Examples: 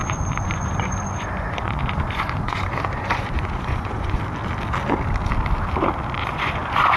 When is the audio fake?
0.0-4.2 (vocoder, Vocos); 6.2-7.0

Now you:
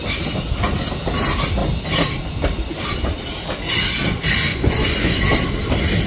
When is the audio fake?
4.5-5.2 (vocoder, Vocos)

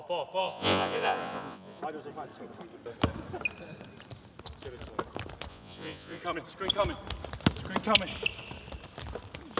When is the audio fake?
0.4-1.8 (vocoder, Vocos); 5.5-6.2

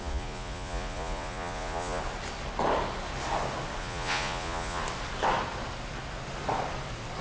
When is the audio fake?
0.0-2.0 (vocoder, Vocos); 3.8-4.8

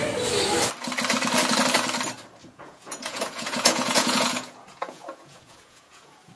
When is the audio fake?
2.4-6.3 (vocoder, Vocos)

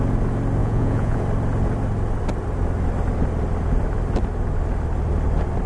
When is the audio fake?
0.6-1.2 (vocoder, Vocos)

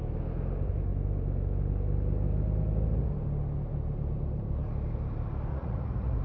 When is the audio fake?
5.5-6.2 (vocoder, Vocos)

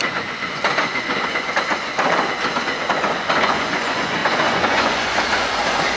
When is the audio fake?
0.0-1.9 (vocoder, Vocos); 2.5-6.0